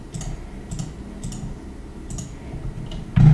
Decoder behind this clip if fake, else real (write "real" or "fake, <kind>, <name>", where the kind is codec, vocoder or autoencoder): real